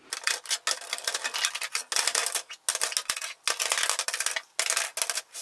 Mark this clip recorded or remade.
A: recorded